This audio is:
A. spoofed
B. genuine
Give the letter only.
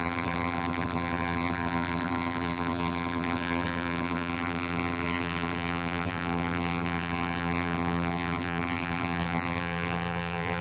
A